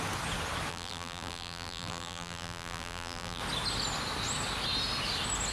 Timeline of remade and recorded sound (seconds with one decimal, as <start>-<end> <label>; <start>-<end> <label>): 0.0-0.7 recorded; 0.7-3.4 remade; 3.4-5.5 recorded